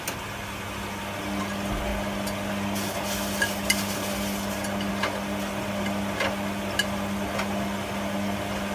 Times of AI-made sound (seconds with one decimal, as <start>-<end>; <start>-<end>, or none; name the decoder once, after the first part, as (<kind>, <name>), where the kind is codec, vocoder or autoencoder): none